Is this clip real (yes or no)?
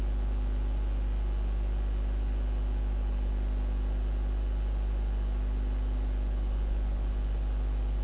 yes